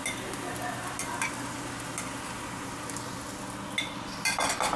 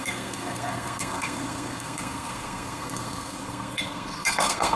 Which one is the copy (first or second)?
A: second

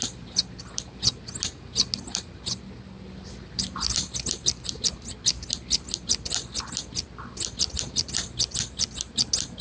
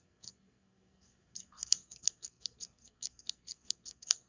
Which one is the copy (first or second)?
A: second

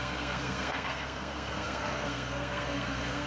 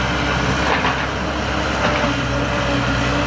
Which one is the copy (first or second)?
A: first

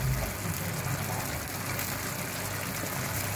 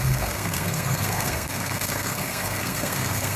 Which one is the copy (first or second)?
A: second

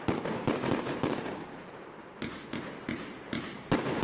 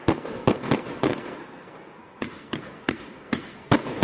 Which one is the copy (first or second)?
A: second